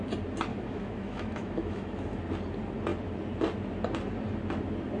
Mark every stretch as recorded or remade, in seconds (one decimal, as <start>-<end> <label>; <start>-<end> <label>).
0.0-0.5 recorded; 0.5-2.2 remade; 2.2-5.0 recorded